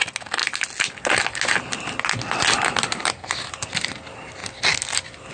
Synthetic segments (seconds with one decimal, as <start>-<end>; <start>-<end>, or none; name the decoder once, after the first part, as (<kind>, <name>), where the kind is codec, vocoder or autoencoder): none